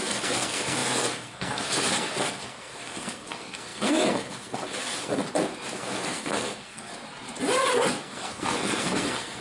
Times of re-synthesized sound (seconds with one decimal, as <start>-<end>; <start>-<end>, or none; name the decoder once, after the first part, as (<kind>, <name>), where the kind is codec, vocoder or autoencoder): 0.0-5.2 (codec, SNAC); 5.7-6.9; 7.7-9.4